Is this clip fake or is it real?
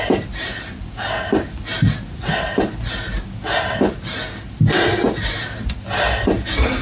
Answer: real